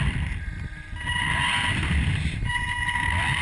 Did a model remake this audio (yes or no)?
no